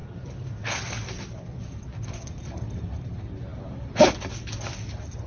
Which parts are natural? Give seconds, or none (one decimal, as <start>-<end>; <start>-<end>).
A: 0.0-5.3